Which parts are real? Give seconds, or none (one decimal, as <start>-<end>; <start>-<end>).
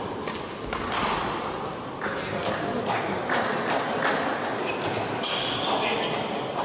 0.0-6.6